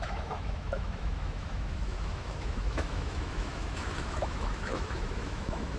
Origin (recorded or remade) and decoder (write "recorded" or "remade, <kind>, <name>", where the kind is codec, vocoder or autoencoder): remade, autoencoder, DAC-VAE